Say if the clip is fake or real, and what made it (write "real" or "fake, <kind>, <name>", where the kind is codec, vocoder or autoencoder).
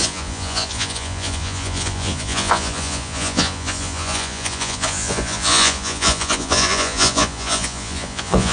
fake, vocoder, Vocos